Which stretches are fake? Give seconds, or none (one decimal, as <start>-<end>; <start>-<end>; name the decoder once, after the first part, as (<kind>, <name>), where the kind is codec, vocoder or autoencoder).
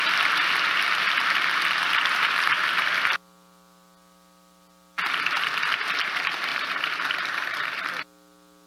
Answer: 1.8-2.5 (vocoder, BigVGAN v2); 6.5-7.8